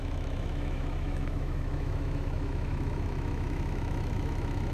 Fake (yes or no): yes